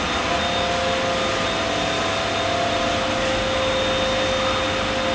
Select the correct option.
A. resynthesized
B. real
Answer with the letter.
B